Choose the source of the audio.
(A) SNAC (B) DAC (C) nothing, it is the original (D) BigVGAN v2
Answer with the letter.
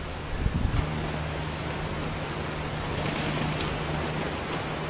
C